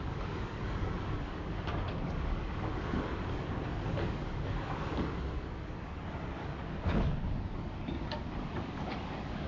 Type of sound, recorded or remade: remade